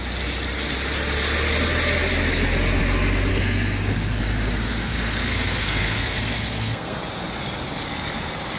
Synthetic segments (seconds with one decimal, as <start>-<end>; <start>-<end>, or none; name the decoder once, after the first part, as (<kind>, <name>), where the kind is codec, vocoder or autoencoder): 3.3-4.2 (codec, SNAC); 4.7-7.0